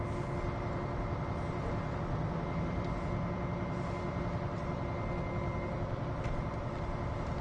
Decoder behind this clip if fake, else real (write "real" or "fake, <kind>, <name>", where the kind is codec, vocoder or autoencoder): real